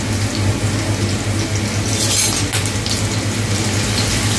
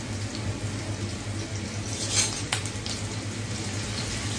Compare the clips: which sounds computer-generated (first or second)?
second